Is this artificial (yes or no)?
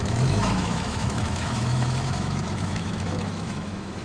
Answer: yes